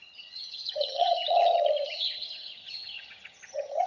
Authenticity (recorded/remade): remade